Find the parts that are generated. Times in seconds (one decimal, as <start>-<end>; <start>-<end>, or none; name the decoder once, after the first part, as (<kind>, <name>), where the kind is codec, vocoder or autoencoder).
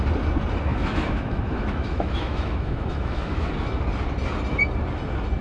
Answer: 0.7-3.5 (autoencoder, DAC-VAE)